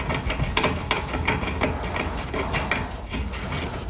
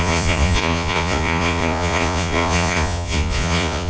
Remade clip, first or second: second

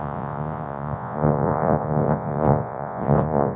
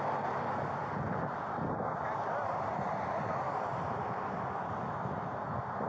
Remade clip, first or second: first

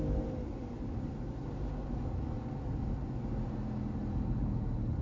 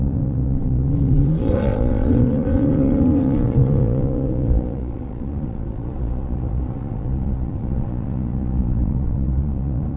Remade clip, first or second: second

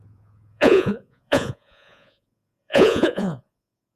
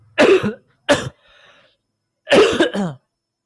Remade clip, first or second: first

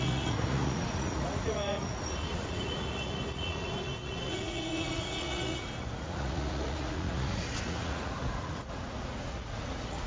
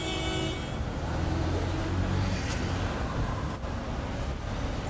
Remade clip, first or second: first